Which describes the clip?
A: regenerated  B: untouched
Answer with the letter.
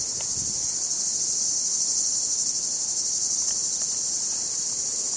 B